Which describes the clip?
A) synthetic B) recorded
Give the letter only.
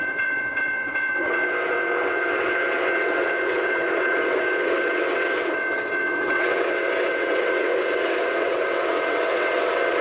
A